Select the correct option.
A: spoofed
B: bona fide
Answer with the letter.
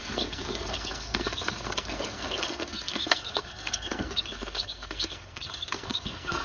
A